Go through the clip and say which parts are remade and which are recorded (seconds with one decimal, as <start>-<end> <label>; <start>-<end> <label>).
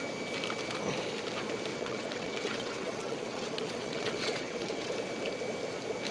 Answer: 0.0-1.7 recorded; 1.7-4.9 remade; 4.9-6.1 recorded